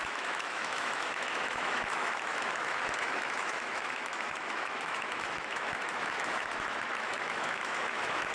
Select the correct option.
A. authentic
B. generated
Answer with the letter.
B